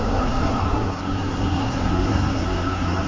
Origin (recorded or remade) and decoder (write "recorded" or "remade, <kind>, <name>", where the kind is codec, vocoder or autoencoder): remade, codec, SNAC